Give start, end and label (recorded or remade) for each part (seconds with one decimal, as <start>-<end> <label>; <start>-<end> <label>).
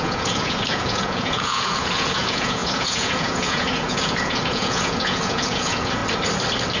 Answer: 0.0-6.0 remade; 6.0-6.8 recorded